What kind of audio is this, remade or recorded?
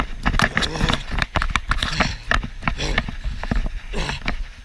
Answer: recorded